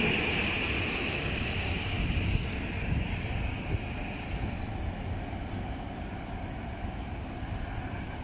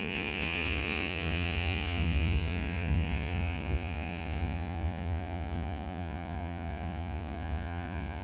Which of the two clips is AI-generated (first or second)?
second